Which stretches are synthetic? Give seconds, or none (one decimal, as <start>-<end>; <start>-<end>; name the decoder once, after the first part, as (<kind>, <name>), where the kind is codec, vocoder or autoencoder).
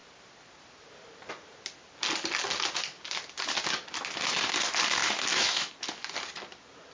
5.0-5.7 (autoencoder, DAC-VAE)